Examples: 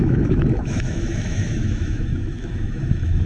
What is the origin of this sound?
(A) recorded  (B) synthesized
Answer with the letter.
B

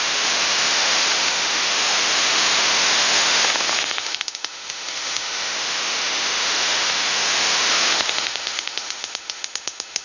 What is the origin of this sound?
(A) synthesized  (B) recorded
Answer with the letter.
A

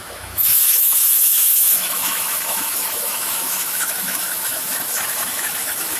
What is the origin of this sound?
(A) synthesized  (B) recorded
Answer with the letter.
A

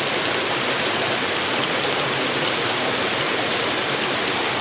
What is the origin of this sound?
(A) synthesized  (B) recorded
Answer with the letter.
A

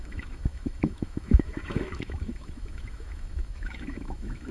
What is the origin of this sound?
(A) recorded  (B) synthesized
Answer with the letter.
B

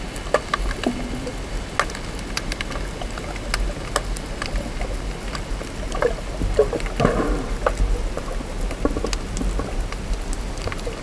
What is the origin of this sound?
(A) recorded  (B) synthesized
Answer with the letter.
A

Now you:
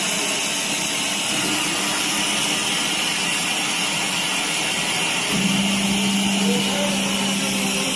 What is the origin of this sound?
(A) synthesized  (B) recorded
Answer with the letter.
B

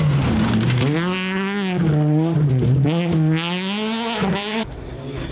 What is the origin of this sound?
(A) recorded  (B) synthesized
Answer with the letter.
A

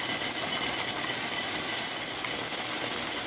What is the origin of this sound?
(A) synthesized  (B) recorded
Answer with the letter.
B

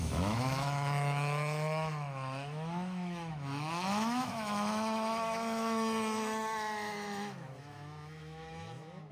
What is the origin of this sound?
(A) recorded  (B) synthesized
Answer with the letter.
B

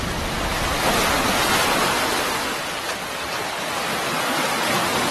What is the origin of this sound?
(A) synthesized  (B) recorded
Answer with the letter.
B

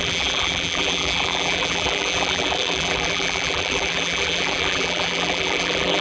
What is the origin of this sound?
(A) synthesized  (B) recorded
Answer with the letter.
A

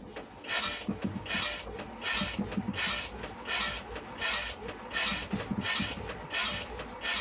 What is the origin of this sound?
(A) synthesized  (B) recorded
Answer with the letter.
B